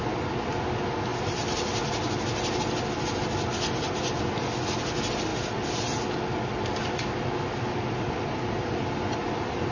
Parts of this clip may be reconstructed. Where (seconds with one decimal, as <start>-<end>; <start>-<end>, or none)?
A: none